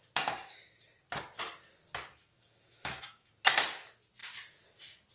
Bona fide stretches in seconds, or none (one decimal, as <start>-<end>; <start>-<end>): 0.0-2.2; 3.3-5.1